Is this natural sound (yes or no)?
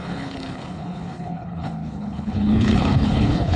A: no